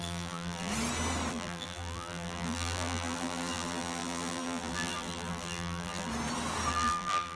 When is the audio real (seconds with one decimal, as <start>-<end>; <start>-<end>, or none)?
0.7-1.3; 6.1-6.7